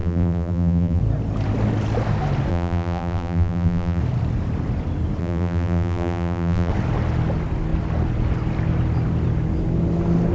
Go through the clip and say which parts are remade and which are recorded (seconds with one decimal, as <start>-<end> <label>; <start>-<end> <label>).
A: 0.0-1.0 remade; 1.0-2.5 recorded; 2.5-4.0 remade; 4.0-5.2 recorded; 5.2-6.7 remade; 6.7-10.3 recorded